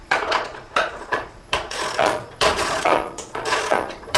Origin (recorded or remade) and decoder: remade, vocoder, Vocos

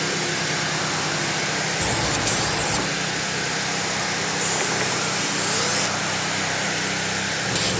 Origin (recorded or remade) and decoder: recorded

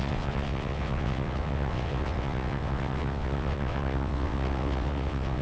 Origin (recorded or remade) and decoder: remade, vocoder, WaveNeXt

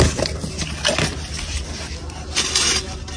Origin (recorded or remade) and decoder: recorded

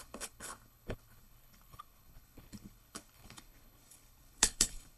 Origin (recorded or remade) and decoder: remade, codec, HILCodec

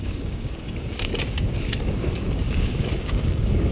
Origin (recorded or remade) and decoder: remade, codec, DAC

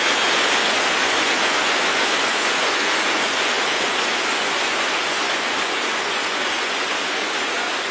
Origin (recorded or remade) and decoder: remade, vocoder, Vocos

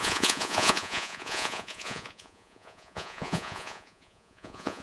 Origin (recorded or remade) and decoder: remade, vocoder, Vocos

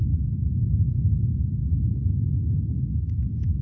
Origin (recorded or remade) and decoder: recorded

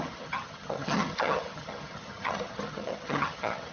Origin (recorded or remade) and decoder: remade, vocoder, HiFi-GAN